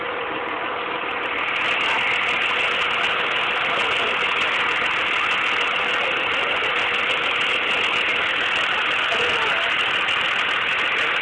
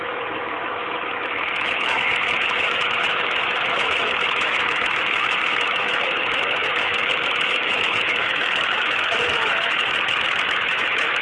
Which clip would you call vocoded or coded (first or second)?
second